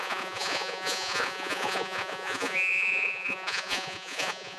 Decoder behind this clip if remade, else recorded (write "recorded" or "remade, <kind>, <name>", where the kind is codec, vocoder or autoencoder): remade, vocoder, Vocos